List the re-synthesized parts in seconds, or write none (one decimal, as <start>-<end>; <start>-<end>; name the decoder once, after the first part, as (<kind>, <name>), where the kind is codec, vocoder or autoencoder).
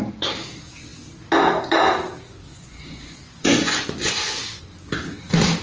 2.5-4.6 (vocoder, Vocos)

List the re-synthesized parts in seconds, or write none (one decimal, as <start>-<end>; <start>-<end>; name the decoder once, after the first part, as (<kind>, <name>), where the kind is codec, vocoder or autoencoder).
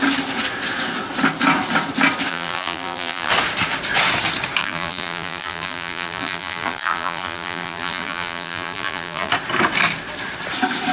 2.3-3.3 (vocoder, BigVGAN v2); 4.6-9.3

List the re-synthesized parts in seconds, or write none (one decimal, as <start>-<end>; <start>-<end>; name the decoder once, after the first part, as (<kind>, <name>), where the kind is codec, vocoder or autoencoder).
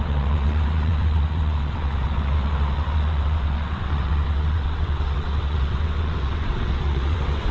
0.0-7.5 (vocoder, WaveNeXt)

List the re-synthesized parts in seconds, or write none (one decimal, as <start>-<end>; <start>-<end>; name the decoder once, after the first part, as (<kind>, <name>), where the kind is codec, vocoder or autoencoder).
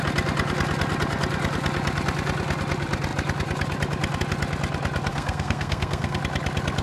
5.1-6.2 (codec, SNAC)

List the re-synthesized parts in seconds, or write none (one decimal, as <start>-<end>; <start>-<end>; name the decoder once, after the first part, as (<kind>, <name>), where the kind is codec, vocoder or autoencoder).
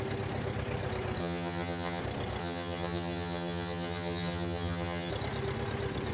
1.2-2.0 (vocoder, HiFi-GAN); 2.4-5.1